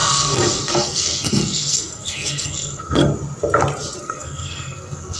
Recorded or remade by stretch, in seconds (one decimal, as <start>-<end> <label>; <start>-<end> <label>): 0.0-3.0 remade; 3.0-4.0 recorded; 4.0-5.2 remade